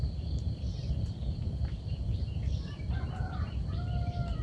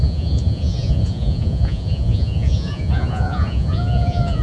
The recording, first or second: first